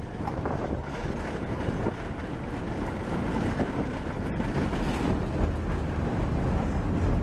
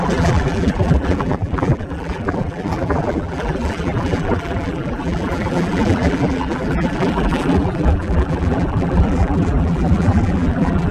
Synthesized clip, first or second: second